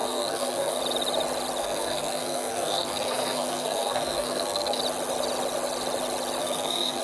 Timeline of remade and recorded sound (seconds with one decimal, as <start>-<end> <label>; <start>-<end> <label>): 0.0-0.8 remade; 0.8-1.6 recorded; 1.6-4.8 remade; 4.8-6.4 recorded; 6.4-7.0 remade

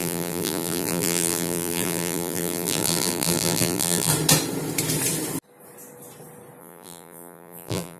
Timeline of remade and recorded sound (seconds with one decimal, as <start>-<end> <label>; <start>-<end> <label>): 0.0-4.1 remade; 4.1-6.6 recorded; 6.6-8.0 remade

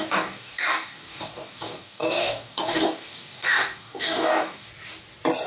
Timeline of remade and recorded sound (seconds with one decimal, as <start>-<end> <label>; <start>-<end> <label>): 0.0-4.7 remade; 4.7-5.5 recorded